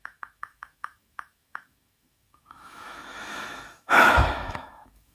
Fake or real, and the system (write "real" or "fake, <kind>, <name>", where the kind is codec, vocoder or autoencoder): fake, autoencoder, DAC-VAE